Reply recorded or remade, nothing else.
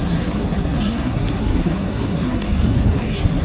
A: remade